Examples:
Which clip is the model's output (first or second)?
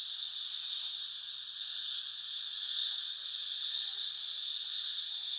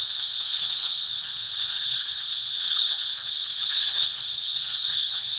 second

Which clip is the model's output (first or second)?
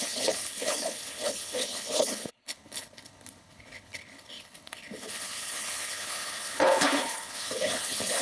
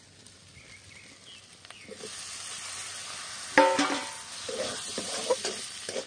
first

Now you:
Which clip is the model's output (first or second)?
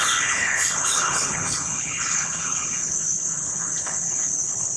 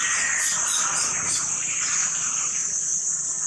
first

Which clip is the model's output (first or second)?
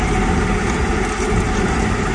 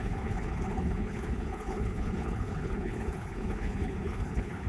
second